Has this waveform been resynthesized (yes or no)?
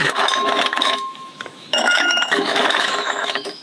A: yes